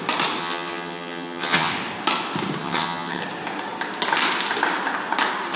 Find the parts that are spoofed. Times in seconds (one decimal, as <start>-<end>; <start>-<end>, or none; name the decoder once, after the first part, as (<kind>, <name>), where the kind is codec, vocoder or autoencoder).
0.4-1.7 (vocoder, HiFi-GAN); 2.6-3.2